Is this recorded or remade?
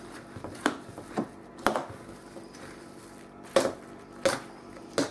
recorded